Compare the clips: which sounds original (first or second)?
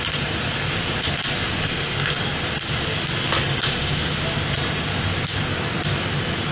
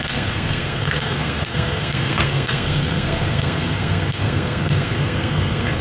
first